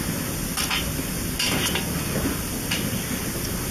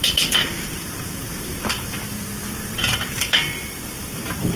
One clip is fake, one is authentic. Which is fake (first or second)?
second